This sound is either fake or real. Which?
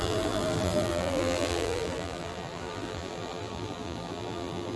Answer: fake